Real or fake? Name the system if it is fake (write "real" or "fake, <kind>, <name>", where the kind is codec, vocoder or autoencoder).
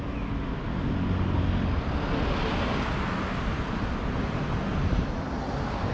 real